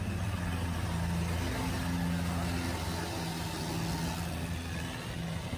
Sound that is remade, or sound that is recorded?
recorded